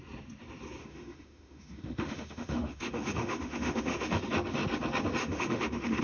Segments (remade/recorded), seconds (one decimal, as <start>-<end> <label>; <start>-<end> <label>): 0.0-0.8 recorded; 0.8-4.2 remade; 4.2-5.2 recorded; 5.2-6.0 remade